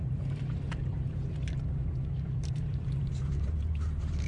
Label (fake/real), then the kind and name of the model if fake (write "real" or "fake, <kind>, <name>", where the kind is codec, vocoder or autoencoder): fake, vocoder, BigVGAN v2